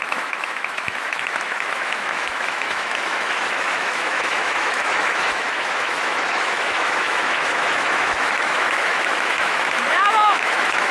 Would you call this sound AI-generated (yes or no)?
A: yes